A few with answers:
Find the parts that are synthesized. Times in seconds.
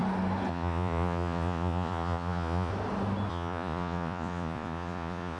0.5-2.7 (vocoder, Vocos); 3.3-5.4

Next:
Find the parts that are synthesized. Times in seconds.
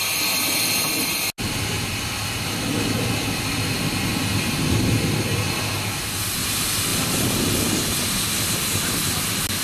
6.9-7.5 (vocoder, BigVGAN v2)